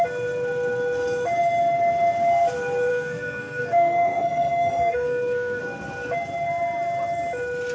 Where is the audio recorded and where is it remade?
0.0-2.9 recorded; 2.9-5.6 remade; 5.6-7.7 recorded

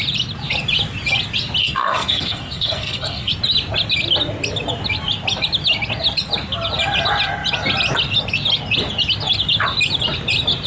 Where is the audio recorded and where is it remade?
0.0-1.6 recorded; 1.6-3.3 remade; 3.3-10.7 recorded